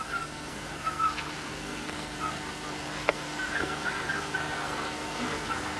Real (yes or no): no